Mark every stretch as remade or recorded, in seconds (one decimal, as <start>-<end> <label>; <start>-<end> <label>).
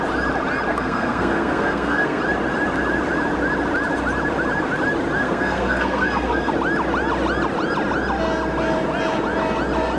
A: 0.0-0.7 recorded; 0.7-2.2 remade; 2.2-5.2 recorded; 5.2-6.5 remade; 6.5-10.0 recorded